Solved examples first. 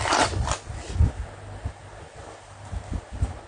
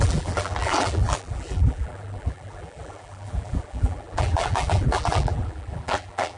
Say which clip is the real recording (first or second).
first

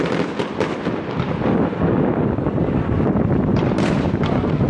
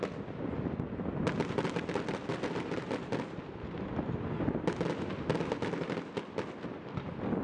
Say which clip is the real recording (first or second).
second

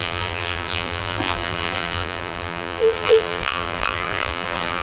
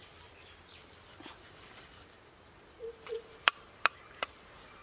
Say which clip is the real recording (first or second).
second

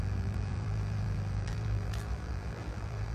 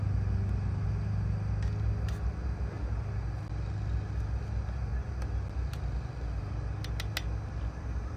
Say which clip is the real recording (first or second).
second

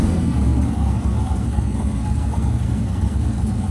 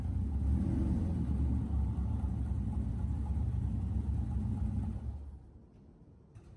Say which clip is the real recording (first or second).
second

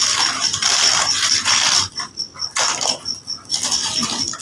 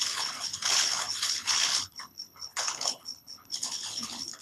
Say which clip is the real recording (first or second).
first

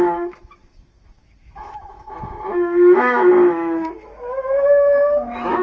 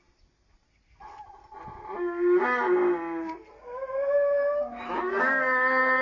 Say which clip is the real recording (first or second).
second